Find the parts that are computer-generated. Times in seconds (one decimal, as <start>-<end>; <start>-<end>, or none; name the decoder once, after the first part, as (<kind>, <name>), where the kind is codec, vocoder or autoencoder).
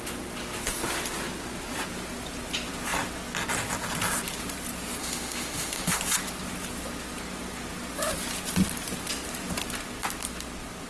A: 5.0-6.0 (autoencoder, DAC-VAE)